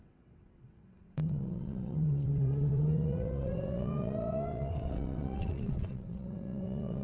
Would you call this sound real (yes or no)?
no